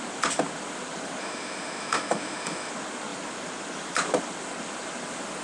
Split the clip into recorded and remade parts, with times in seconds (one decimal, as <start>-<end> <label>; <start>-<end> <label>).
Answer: 0.0-1.2 recorded; 1.2-2.7 remade; 2.7-5.4 recorded